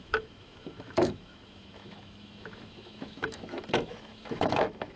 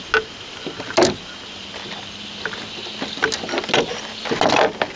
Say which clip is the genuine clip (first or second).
second